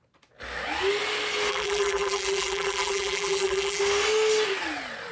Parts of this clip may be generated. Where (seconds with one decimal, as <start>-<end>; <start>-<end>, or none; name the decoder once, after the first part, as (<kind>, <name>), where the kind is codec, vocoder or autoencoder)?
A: 1.5-3.8 (vocoder, BigVGAN v2)